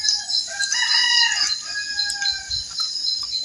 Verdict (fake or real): real